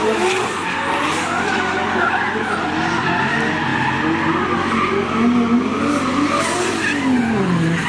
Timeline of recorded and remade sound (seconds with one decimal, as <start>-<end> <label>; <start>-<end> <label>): 0.0-7.9 recorded